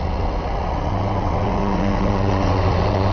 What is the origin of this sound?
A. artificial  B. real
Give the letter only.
A